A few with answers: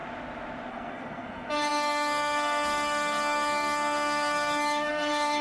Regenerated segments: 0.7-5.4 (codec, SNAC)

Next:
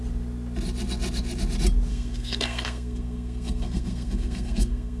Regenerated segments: 1.9-5.0 (codec, SNAC)